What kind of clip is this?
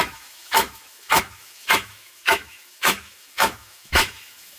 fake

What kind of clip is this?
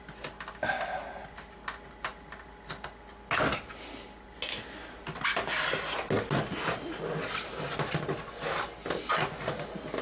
real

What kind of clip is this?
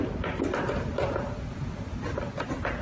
real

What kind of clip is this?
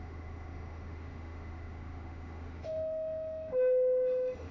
fake